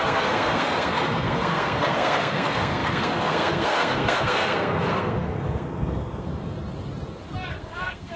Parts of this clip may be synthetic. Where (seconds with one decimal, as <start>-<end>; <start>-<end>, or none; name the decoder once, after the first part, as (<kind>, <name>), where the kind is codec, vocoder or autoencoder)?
0.0-6.3 (codec, SNAC); 7.5-8.2